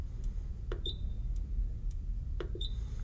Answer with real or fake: fake